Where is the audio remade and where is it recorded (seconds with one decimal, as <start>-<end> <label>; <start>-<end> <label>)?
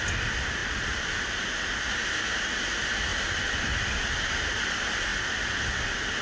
0.0-0.6 recorded; 0.6-1.6 remade; 1.6-3.1 recorded; 3.1-3.8 remade; 3.8-6.2 recorded